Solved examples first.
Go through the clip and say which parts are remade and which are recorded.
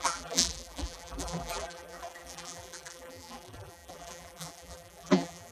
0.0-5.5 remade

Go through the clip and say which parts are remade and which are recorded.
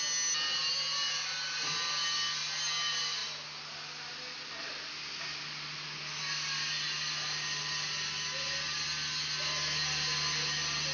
0.0-10.9 recorded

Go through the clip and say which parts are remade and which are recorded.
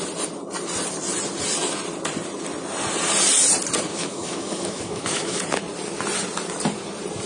0.0-3.9 recorded; 3.9-5.4 remade; 5.4-7.3 recorded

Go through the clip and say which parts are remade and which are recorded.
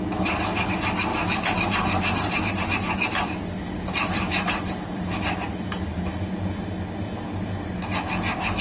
0.0-1.1 recorded; 1.1-6.3 remade; 6.3-8.6 recorded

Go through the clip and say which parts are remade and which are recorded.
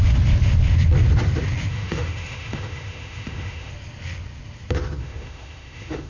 0.0-1.7 recorded; 1.7-3.7 remade; 3.7-5.0 recorded; 5.0-6.1 remade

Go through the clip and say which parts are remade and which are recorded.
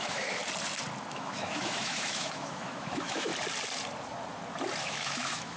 0.0-0.4 remade; 0.4-1.1 recorded; 1.1-3.3 remade; 3.3-4.8 recorded; 4.8-5.6 remade